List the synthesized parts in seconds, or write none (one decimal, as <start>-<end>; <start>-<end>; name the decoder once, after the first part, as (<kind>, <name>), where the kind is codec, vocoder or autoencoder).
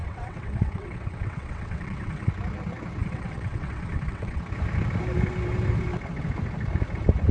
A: 0.0-2.3 (vocoder, WaveNeXt); 3.0-4.4